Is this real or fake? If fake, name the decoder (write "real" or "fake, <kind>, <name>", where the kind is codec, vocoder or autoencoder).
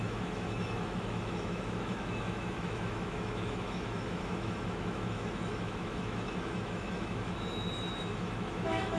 fake, autoencoder, DAC-VAE